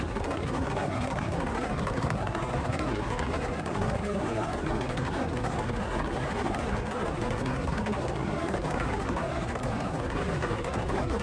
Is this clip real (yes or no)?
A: no